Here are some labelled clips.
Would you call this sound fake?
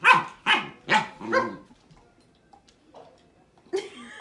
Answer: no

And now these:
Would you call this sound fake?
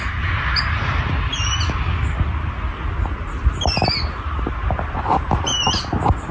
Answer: no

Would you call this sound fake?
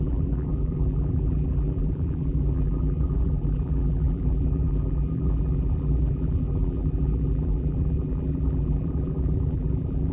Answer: yes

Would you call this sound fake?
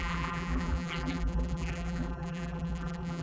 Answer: yes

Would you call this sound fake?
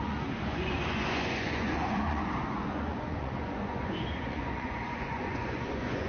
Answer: yes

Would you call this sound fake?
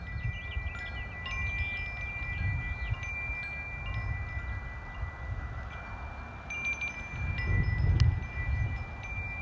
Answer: no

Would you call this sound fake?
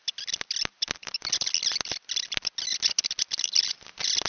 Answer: no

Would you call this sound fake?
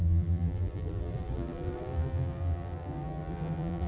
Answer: yes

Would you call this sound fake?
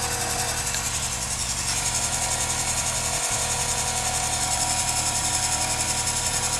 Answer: no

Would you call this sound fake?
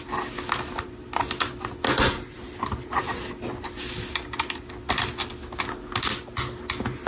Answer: no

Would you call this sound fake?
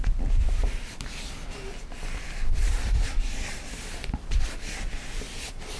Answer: yes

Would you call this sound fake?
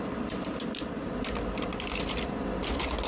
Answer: no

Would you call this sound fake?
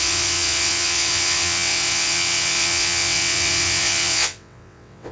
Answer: yes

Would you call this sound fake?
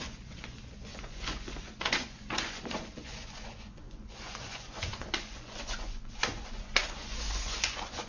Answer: yes